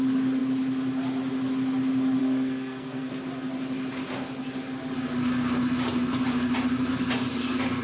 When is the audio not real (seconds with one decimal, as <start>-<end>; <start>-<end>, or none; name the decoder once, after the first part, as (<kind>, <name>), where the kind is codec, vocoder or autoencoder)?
2.2-3.1 (codec, SNAC)